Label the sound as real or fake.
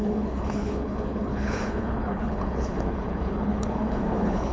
fake